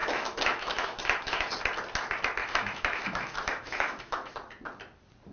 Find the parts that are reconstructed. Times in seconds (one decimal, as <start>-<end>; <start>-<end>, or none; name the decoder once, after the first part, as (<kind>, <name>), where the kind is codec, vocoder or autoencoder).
0.0-1.5 (autoencoder, DAC-VAE); 2.4-4.3